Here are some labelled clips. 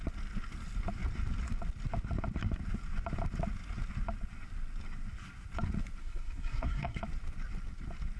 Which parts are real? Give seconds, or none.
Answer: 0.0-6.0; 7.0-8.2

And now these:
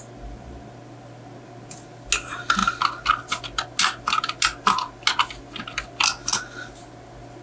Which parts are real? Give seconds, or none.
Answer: 0.0-7.4

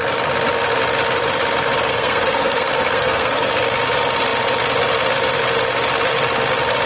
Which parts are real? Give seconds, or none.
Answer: 0.0-1.9; 3.5-6.9

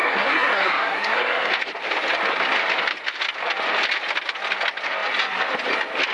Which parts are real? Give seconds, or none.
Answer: 1.5-6.1

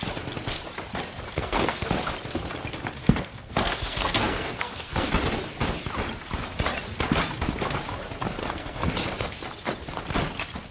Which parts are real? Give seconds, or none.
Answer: 0.0-1.4; 1.9-3.0; 5.1-8.4; 8.9-10.7

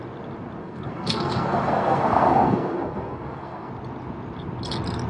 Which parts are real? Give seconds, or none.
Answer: 0.0-0.6; 3.7-5.1

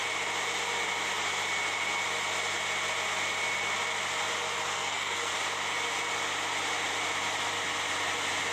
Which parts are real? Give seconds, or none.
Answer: 0.0-4.7; 5.3-8.5